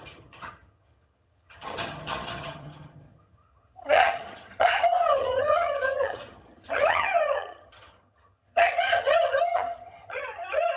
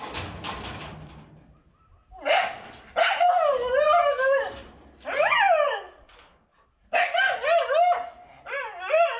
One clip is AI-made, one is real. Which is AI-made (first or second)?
first